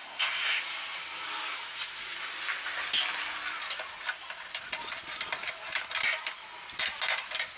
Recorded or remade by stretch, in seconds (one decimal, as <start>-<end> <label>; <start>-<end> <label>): 0.0-0.6 remade; 0.6-7.6 recorded